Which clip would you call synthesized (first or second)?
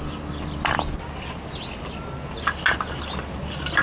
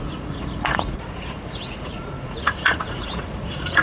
second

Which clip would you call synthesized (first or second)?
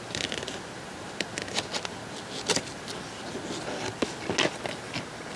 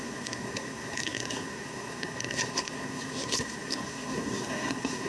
second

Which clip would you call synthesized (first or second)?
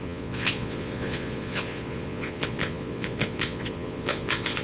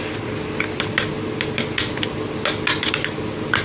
first